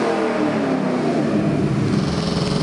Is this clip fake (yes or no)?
no